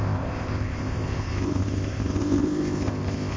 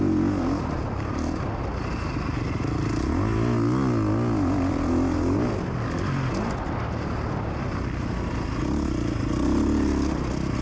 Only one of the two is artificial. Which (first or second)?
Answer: first